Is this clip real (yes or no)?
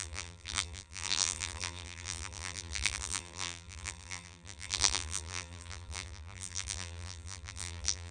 no